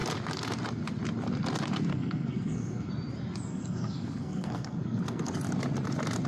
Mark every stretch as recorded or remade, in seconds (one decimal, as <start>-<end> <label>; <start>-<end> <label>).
0.0-1.9 recorded; 1.9-2.9 remade; 2.9-3.5 recorded; 3.5-5.3 remade; 5.3-6.3 recorded